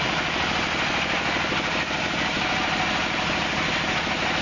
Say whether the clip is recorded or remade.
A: recorded